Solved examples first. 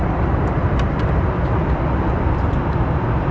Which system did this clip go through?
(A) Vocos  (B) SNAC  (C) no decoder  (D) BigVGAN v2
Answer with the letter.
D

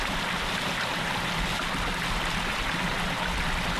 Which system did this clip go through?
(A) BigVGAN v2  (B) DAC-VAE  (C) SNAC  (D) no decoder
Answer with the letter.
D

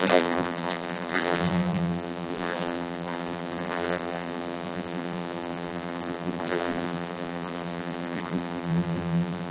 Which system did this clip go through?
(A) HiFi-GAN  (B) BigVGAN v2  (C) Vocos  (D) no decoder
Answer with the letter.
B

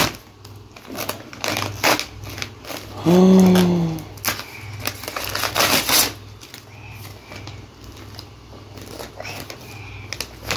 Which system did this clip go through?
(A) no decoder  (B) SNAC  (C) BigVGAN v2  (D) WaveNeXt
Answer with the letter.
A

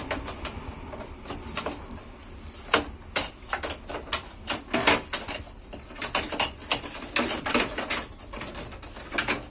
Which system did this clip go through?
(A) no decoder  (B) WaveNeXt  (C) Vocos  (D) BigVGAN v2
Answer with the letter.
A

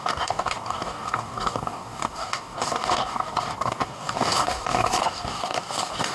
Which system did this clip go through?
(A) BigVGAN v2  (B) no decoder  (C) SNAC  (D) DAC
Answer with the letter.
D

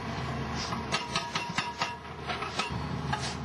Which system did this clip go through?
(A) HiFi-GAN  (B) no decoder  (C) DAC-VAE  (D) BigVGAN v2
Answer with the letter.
D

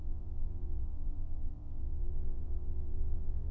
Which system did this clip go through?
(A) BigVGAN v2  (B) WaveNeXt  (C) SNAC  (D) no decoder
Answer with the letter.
B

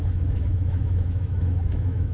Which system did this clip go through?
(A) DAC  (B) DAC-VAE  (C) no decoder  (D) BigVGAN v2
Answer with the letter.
B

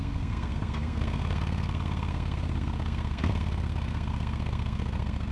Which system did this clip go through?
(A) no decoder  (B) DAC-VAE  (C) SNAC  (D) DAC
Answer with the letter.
C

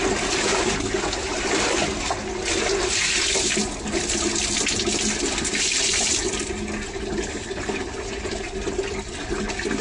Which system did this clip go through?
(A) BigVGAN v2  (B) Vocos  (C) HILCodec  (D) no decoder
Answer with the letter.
D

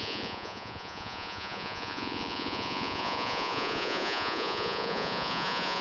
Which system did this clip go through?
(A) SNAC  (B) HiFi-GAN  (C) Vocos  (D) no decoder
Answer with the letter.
C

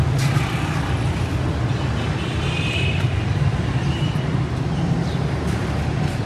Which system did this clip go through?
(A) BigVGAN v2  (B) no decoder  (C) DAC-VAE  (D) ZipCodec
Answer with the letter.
A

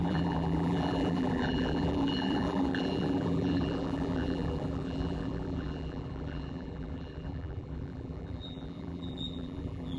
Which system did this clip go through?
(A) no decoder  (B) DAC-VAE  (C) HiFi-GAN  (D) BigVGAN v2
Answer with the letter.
D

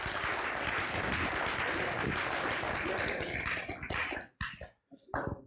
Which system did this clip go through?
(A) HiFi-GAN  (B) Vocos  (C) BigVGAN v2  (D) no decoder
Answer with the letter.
D